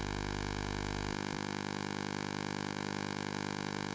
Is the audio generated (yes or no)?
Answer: yes